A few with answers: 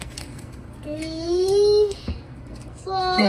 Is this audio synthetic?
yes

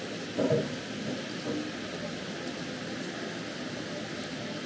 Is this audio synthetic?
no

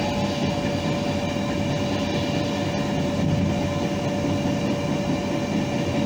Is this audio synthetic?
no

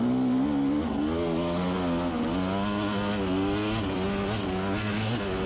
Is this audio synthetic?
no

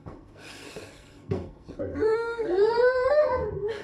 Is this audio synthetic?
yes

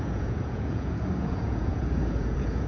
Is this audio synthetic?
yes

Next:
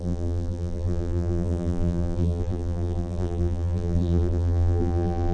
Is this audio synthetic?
yes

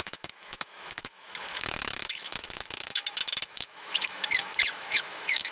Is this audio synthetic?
yes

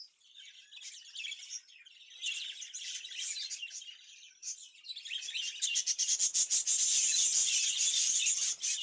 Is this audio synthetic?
no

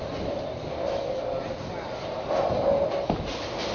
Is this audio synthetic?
no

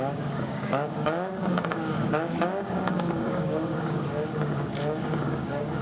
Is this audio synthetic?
yes